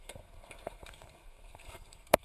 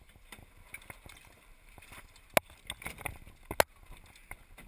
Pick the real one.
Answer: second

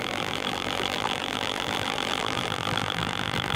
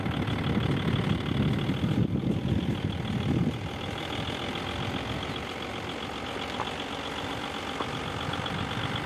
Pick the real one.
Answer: second